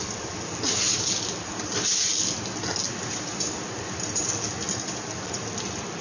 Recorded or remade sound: recorded